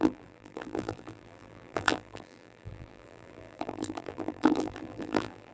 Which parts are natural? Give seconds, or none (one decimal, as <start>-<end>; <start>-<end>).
none